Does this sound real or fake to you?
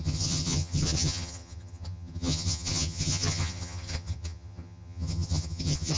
fake